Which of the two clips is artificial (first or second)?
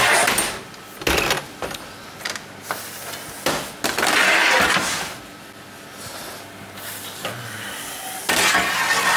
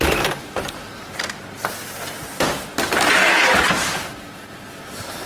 second